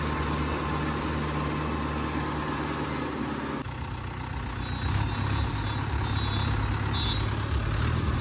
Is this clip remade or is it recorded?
recorded